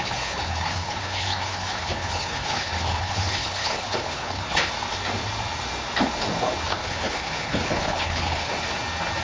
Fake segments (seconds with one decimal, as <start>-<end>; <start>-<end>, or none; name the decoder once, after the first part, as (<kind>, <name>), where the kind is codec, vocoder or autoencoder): 0.0-4.7 (codec, HILCodec); 6.7-8.5